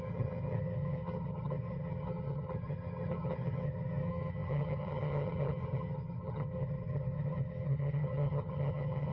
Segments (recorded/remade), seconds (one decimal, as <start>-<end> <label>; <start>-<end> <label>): 0.0-9.1 remade